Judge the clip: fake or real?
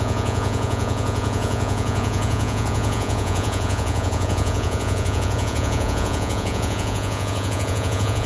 fake